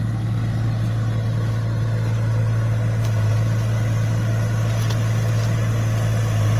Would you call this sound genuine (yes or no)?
yes